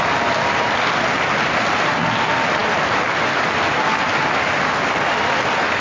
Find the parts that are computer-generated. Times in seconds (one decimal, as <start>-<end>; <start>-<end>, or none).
none